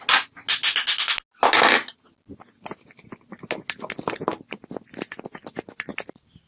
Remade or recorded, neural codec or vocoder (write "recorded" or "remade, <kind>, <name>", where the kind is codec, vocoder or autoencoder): recorded